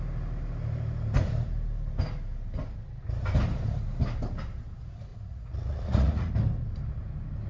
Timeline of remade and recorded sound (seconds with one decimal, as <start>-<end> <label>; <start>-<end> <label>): 0.0-5.1 recorded; 5.1-6.3 remade; 6.3-7.5 recorded